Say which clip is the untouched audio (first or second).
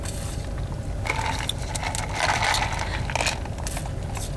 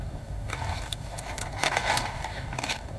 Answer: first